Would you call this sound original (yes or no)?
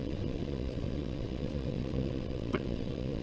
no